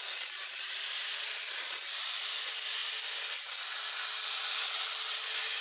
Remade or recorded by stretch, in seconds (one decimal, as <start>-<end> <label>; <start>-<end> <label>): 0.0-2.8 remade; 2.8-4.6 recorded; 4.6-5.6 remade